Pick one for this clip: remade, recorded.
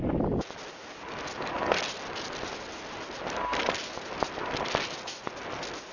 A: recorded